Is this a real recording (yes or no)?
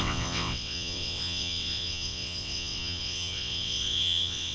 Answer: no